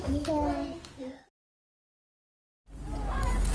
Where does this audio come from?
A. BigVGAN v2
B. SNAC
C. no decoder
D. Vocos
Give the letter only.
C